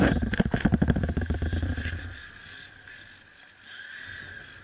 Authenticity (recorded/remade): recorded